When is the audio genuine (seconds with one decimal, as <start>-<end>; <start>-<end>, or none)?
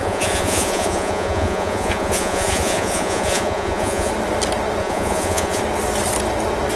4.1-4.8; 5.6-6.8